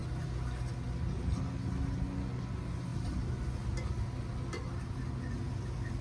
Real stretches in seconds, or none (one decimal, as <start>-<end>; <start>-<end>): 0.0-6.0